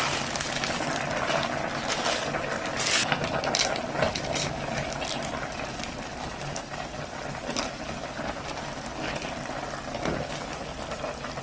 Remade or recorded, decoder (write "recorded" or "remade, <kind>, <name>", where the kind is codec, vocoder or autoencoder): recorded